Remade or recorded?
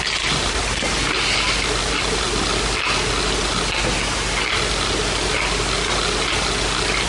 recorded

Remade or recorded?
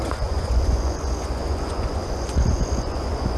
remade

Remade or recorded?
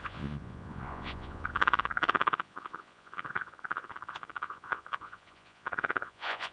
remade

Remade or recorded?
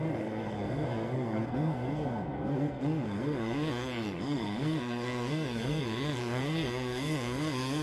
remade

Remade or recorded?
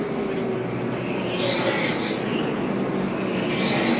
recorded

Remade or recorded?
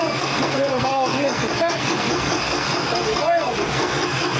remade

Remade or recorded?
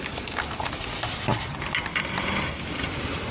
recorded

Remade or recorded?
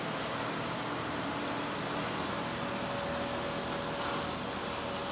recorded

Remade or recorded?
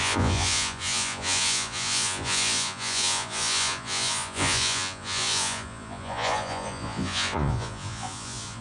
remade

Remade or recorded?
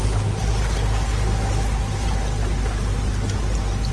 recorded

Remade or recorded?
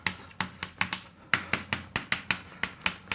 recorded